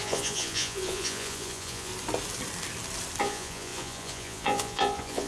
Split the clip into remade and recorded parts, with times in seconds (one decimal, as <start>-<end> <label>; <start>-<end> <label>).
0.0-1.9 remade; 1.9-3.2 recorded; 3.2-5.3 remade